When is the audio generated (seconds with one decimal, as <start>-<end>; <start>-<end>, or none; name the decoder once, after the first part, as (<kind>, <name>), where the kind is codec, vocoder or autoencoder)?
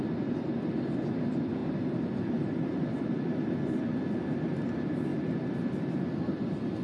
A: none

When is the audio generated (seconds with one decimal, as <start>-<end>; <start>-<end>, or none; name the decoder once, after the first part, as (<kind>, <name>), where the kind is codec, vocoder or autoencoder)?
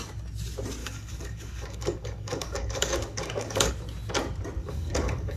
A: 0.8-3.7 (codec, DAC); 4.6-5.4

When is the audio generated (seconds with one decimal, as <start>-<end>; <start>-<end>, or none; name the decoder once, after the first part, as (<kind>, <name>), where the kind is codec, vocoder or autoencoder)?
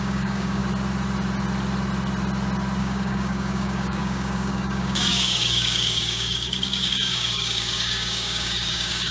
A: 0.0-0.6 (codec, DAC); 2.8-9.1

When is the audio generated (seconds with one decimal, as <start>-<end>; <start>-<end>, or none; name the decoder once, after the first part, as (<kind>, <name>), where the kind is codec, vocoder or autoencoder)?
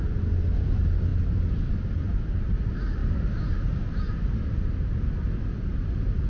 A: none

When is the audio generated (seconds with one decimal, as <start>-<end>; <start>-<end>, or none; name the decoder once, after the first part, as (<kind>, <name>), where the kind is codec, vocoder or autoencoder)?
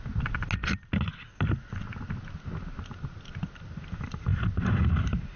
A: none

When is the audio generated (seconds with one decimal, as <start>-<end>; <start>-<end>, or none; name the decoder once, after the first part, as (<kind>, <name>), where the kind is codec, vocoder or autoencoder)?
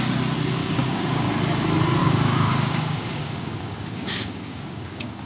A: 0.6-1.3 (codec, DAC); 2.0-5.3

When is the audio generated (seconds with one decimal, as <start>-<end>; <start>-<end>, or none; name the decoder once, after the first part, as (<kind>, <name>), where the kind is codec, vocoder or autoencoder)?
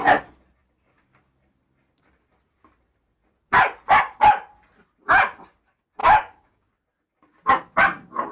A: 6.0-6.7 (codec, DAC)